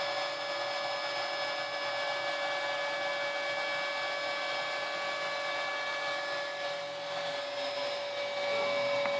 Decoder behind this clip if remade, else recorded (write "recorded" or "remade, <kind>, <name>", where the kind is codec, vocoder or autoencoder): recorded